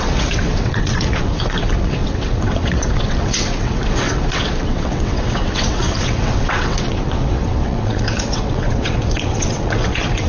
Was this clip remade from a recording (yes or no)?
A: yes